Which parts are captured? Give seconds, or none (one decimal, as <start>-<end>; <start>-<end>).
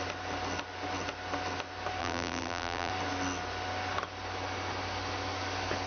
0.0-2.0; 2.9-5.9